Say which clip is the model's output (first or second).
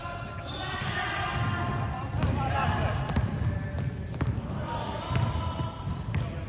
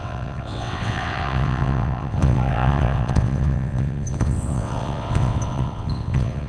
second